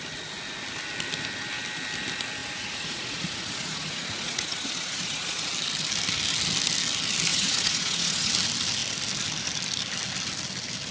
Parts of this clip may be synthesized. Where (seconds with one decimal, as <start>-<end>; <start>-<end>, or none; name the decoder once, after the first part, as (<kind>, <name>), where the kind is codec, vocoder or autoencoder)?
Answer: 2.4-5.5 (vocoder, Vocos); 7.3-8.3